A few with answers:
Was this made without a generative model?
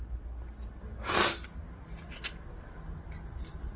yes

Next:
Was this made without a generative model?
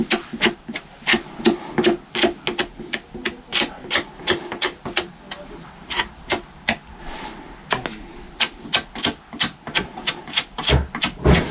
yes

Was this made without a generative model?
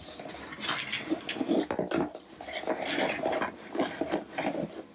yes